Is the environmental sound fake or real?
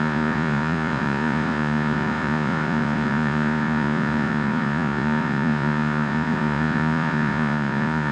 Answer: fake